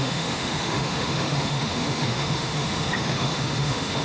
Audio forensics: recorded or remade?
remade